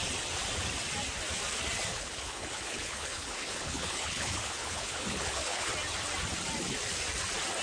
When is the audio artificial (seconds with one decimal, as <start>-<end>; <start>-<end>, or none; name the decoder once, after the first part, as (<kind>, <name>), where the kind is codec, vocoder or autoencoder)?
1.9-5.7 (codec, HILCodec)